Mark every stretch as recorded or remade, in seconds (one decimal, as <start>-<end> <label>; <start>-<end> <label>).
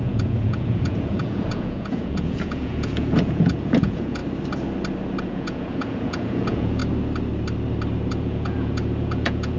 0.0-4.2 remade; 4.2-5.2 recorded; 5.2-6.8 remade; 6.8-8.1 recorded; 8.1-9.6 remade